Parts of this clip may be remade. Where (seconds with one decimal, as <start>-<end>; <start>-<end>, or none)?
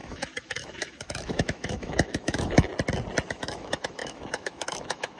0.0-2.7; 3.3-5.2